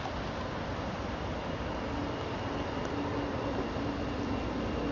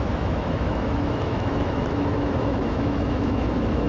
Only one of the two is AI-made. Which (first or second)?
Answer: second